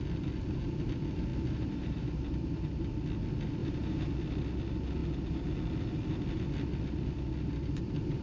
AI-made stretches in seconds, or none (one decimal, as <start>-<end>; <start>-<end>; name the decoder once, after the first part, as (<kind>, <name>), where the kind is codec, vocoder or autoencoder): 1.3-2.8 (vocoder, BigVGAN v2); 3.6-4.1